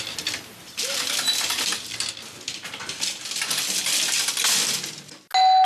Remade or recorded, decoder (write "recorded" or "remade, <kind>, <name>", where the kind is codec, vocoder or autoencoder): recorded